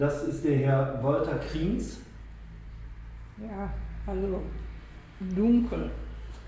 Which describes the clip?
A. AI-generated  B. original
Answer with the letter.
B